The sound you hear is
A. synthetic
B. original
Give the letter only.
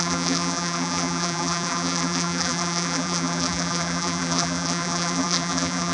A